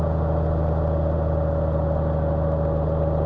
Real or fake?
real